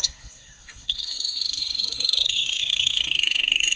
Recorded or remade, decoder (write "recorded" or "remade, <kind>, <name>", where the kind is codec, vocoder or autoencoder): remade, codec, SNAC